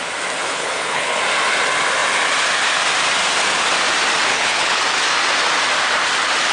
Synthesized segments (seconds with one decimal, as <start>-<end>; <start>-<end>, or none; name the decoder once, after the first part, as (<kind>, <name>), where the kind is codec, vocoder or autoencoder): 0.4-1.2 (codec, HILCodec); 4.3-4.8